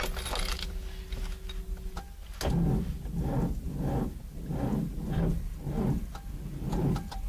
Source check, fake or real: real